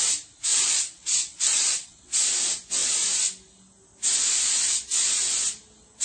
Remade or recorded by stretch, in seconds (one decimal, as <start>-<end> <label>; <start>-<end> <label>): 0.0-0.5 recorded; 0.5-2.2 remade; 2.2-6.0 recorded